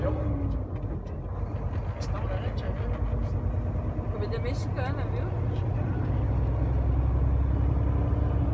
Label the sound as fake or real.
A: real